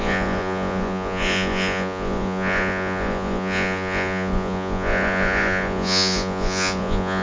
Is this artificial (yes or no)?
yes